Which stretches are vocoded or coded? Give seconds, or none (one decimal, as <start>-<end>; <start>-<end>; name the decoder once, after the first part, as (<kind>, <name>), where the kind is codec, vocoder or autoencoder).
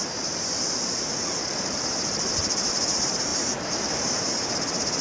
0.0-5.0 (vocoder, BigVGAN v2)